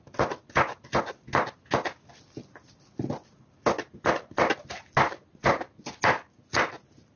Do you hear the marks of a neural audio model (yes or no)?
no